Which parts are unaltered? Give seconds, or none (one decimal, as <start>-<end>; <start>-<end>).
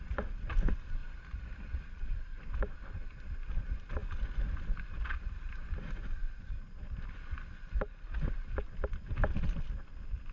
0.0-1.0; 3.3-10.3